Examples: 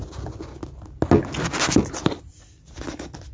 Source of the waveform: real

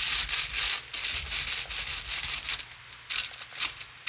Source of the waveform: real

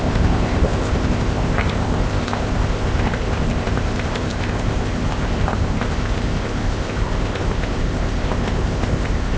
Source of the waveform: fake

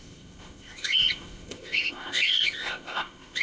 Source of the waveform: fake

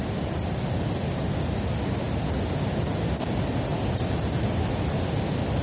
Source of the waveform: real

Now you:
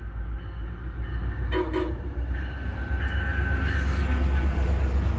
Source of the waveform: real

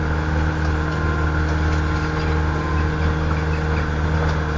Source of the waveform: real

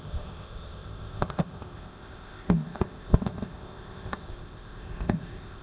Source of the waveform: fake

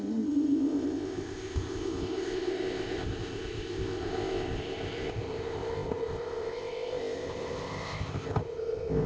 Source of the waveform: fake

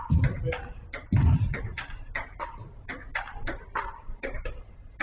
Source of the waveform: real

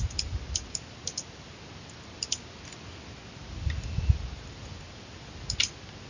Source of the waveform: real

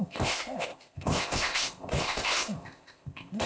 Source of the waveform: fake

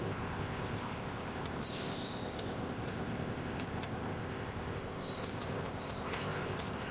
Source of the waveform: fake